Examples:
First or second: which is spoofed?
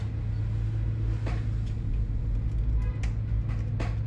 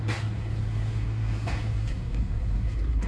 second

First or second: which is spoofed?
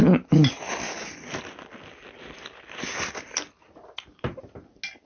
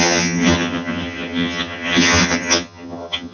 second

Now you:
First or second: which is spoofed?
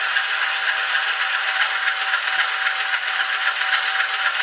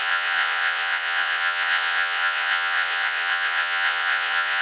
second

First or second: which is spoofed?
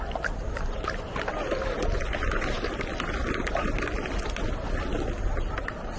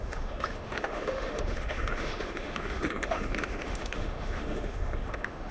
second